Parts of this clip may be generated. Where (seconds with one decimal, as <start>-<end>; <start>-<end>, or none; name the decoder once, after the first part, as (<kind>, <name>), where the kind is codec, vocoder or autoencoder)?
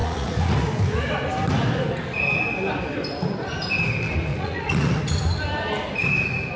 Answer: 0.0-0.6 (vocoder, Vocos); 4.3-5.0